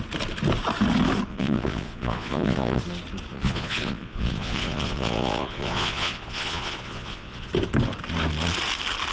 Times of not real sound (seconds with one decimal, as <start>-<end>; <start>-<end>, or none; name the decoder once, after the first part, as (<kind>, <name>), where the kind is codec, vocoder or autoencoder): 1.3-2.8 (vocoder, Vocos); 3.3-7.5